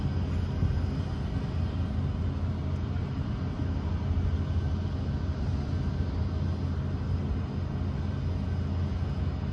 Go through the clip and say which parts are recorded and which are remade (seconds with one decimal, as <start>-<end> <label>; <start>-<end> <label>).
0.0-9.5 recorded